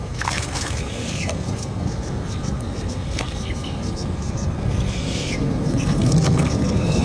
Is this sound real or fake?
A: fake